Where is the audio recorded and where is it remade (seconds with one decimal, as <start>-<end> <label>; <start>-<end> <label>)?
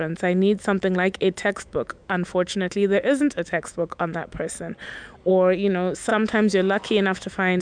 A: 0.0-4.5 remade; 4.5-5.3 recorded; 5.3-7.6 remade